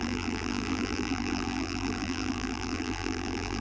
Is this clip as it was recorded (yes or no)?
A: no